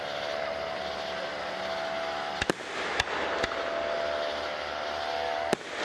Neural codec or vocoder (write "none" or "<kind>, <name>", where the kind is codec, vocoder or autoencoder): none